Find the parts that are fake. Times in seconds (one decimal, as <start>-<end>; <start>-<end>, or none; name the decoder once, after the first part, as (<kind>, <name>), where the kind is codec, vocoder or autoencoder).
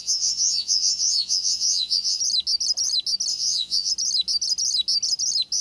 0.0-2.2 (vocoder, Vocos); 3.3-3.9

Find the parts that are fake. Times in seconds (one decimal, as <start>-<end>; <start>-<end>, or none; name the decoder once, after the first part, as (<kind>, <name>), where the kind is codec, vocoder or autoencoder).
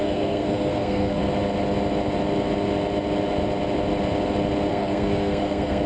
0.0-1.2 (codec, SNAC); 4.7-5.9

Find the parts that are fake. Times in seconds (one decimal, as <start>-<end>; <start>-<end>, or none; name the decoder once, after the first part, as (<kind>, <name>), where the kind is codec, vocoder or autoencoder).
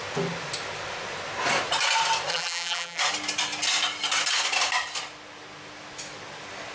2.3-3.0 (vocoder, BigVGAN v2)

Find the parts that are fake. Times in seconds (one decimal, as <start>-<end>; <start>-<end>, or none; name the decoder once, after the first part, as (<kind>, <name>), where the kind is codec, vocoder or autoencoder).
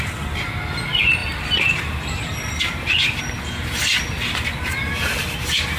none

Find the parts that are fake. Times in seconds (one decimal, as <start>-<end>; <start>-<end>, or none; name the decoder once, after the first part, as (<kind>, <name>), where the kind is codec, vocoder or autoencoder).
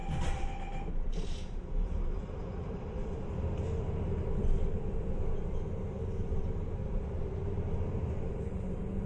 0.9-3.0 (vocoder, BigVGAN v2); 5.8-9.1